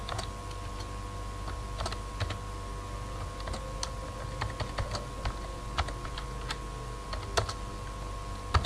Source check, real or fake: real